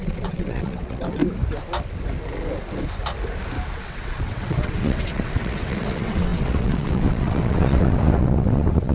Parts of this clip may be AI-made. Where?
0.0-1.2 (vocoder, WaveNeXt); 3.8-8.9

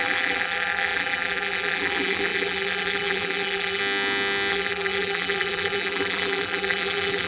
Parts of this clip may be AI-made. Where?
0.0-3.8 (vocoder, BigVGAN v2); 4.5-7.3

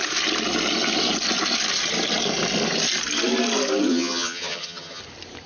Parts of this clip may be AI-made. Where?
3.9-5.0 (vocoder, HiFi-GAN)

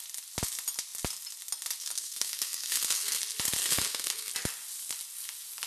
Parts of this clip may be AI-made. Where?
1.8-3.2 (codec, SNAC); 3.6-4.3

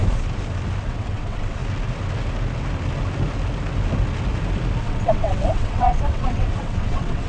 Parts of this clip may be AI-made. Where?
0.8-1.6 (vocoder, WaveNeXt); 4.8-7.3

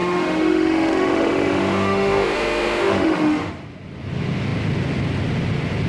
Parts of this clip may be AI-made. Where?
0.0-3.5 (autoencoder, DAC-VAE)